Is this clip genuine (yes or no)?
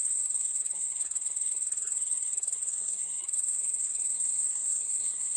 no